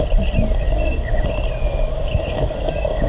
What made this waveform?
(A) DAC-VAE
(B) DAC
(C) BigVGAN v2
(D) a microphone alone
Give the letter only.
D